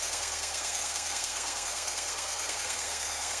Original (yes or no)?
no